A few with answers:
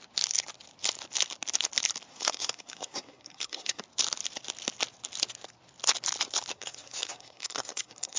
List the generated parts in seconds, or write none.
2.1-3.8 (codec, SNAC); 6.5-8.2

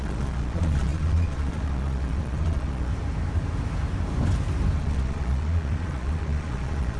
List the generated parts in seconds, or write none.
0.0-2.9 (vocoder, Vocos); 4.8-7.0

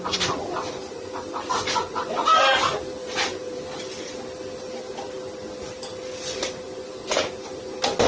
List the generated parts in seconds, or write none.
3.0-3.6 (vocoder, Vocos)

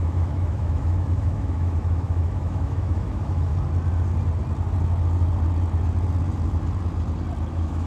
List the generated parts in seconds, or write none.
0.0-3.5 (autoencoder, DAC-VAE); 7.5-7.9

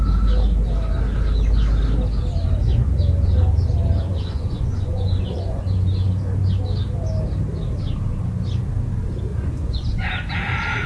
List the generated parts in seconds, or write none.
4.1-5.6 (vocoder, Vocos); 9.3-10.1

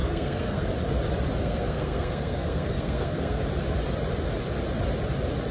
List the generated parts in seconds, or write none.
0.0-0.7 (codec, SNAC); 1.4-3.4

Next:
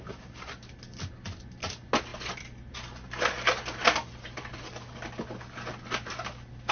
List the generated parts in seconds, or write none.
none

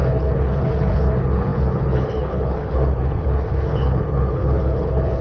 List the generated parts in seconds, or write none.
0.0-5.2 (codec, HILCodec)